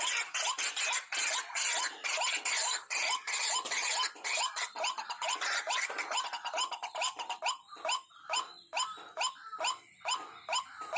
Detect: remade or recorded recorded